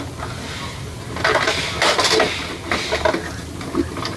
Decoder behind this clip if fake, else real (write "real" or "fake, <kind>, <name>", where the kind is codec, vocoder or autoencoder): real